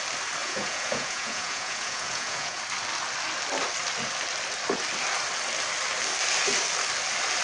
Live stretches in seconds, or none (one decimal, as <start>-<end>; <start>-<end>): 0.0-0.4; 2.6-7.4